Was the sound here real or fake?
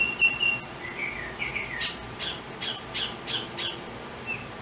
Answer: real